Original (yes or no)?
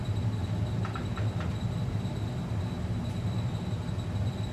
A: yes